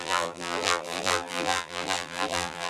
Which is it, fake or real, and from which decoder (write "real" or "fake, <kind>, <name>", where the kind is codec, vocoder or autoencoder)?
fake, vocoder, BigVGAN v2